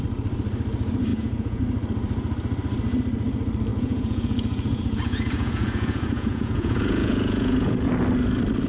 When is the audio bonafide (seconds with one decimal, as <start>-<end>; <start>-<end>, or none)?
0.0-1.1; 1.6-3.7; 7.9-8.7